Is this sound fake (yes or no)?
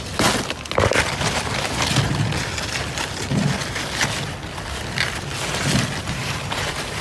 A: no